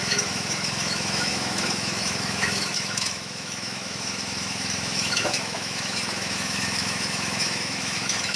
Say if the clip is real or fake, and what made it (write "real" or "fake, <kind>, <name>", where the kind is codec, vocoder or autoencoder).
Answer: fake, autoencoder, DAC-VAE